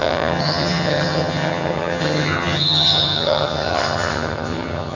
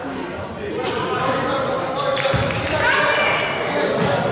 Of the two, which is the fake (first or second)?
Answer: first